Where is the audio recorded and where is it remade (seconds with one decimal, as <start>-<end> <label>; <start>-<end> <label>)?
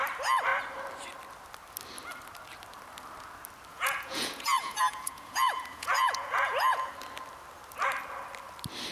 0.0-3.7 recorded; 3.7-6.9 remade; 6.9-8.9 recorded